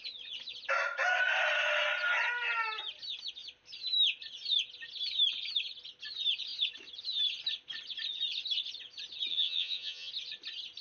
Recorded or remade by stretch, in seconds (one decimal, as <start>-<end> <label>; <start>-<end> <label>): 0.0-9.3 recorded; 9.3-10.1 remade; 10.1-10.8 recorded